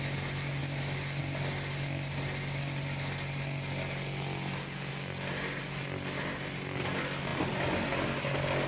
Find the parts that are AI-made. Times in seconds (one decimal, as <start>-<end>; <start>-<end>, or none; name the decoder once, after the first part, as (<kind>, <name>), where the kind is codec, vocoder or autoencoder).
none